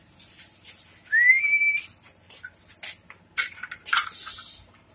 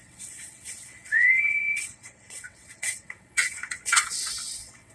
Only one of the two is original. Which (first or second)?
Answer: first